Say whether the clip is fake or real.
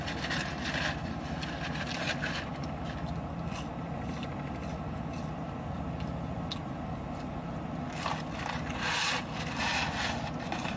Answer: real